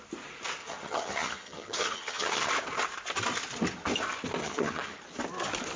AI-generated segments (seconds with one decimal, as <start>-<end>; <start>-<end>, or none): 0.6-2.5; 4.4-5.0